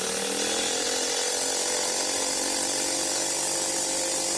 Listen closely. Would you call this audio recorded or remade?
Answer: recorded